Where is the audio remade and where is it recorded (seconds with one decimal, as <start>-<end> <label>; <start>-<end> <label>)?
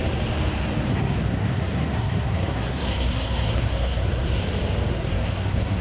0.0-0.9 recorded; 0.9-4.4 remade; 4.4-4.9 recorded; 4.9-5.8 remade